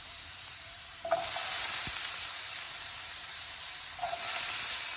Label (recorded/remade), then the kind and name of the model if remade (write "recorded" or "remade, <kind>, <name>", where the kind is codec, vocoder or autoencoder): remade, vocoder, BigVGAN v2